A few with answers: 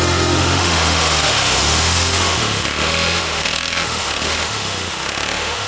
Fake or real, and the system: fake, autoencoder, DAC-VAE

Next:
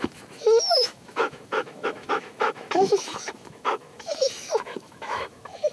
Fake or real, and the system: fake, autoencoder, DAC-VAE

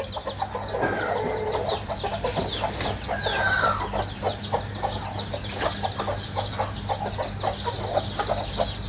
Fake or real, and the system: real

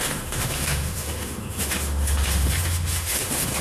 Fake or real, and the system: fake, autoencoder, DAC-VAE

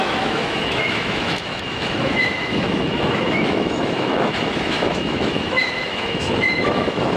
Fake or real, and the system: fake, autoencoder, DAC-VAE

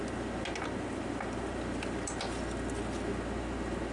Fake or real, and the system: real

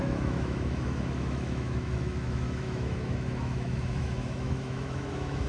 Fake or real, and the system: fake, autoencoder, DAC-VAE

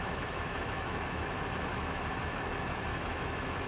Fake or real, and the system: fake, autoencoder, DAC-VAE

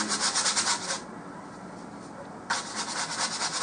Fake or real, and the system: real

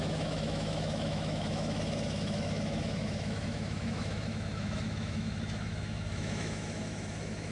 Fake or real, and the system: fake, autoencoder, DAC-VAE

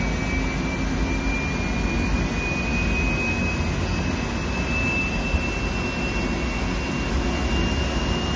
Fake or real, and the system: real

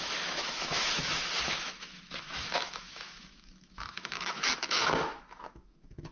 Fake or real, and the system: fake, autoencoder, DAC-VAE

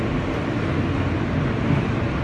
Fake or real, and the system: real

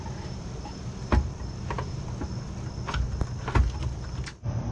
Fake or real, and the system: real